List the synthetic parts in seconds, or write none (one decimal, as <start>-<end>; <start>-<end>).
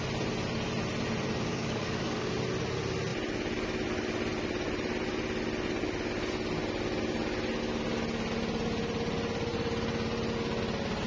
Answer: 1.5-2.3